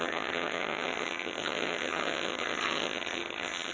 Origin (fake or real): fake